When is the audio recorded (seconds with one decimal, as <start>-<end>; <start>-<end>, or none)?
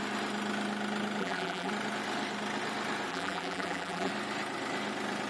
0.0-1.2; 1.7-3.1; 4.1-5.3